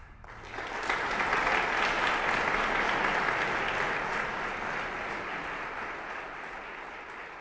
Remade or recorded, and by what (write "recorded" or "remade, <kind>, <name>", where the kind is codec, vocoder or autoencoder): recorded